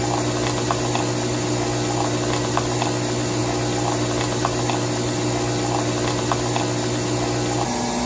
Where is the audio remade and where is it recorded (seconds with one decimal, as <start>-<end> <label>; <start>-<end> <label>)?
0.0-8.1 recorded